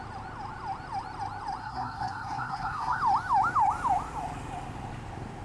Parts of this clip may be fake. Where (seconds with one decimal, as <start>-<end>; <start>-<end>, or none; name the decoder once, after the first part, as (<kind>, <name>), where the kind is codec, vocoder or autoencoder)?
1.6-3.0 (codec, SNAC)